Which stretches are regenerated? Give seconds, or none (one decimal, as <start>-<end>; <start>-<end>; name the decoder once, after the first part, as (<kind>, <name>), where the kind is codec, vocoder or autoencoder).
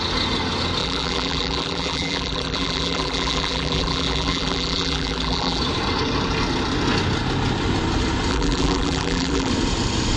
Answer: 0.8-5.6 (vocoder, BigVGAN v2); 8.3-9.5